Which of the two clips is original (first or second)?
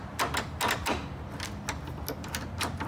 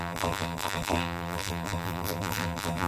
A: first